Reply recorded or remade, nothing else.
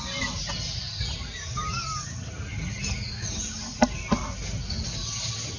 recorded